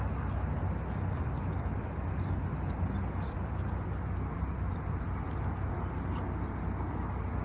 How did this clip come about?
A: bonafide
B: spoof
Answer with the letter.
A